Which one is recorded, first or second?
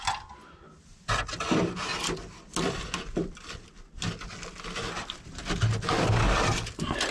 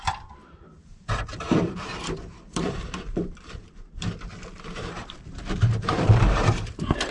first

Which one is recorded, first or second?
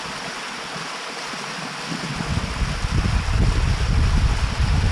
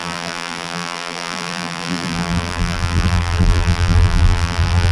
first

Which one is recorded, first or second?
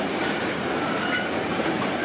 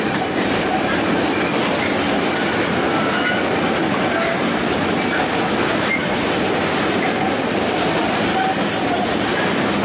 second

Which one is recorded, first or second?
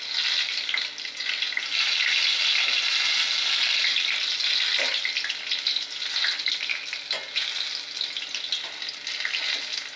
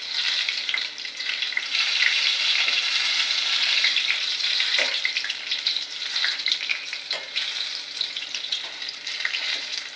first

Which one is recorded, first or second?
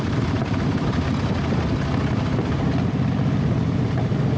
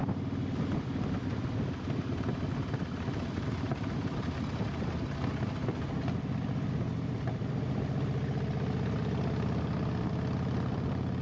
second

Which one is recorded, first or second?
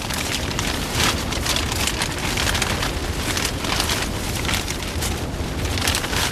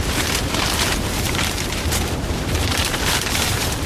first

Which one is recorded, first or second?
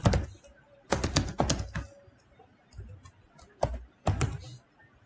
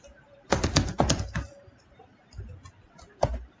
first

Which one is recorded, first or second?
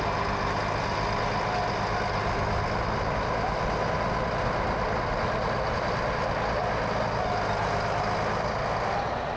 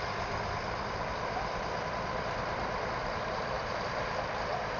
first